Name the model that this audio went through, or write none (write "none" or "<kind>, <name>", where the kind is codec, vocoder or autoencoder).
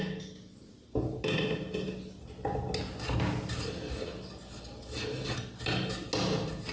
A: none